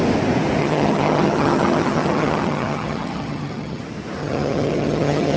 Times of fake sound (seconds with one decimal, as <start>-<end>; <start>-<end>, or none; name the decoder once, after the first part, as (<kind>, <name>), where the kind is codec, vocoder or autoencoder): 0.6-3.8 (vocoder, HiFi-GAN); 4.2-5.4